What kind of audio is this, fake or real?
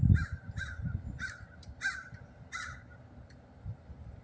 fake